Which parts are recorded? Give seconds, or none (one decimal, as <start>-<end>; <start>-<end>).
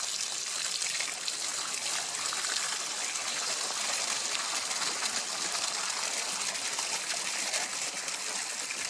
0.0-1.5; 4.5-8.9